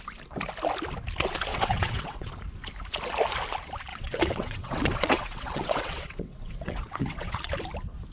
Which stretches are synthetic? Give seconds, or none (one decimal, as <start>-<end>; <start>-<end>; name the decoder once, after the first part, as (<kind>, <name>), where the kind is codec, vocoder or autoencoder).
1.5-2.3 (vocoder, WaveNeXt); 3.9-7.5